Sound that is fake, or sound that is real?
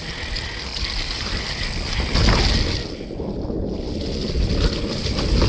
real